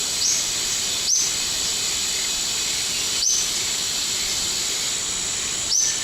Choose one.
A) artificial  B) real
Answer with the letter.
B